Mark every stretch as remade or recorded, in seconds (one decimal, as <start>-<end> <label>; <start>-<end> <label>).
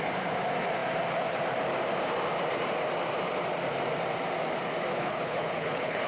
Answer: 0.0-4.9 recorded; 4.9-6.1 remade